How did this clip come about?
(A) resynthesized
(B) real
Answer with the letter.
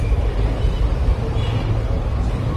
B